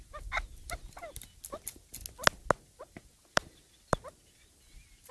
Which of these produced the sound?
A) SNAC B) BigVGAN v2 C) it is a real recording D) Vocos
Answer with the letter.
C